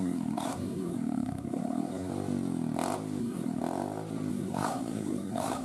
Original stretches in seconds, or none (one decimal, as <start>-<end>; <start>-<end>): 2.1-3.2; 3.6-4.3